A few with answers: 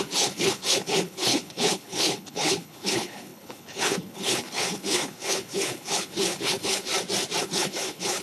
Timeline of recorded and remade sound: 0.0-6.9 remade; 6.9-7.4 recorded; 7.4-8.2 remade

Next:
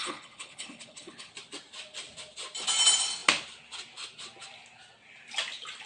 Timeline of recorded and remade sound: 0.0-1.3 remade; 1.3-5.9 recorded

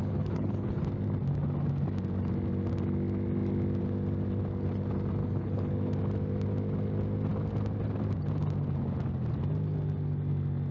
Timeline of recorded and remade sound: 0.0-0.8 remade; 0.8-5.2 recorded; 5.2-5.7 remade; 5.7-10.7 recorded

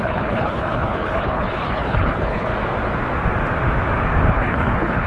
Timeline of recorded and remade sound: 0.0-2.5 remade; 2.5-4.3 recorded; 4.3-5.1 remade

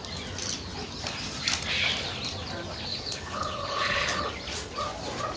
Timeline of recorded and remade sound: 0.0-2.9 recorded; 2.9-4.3 remade; 4.3-5.4 recorded

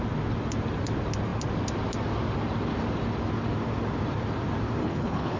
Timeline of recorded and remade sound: 0.0-4.8 recorded; 4.8-5.4 remade